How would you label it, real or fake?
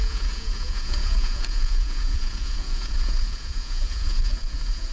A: fake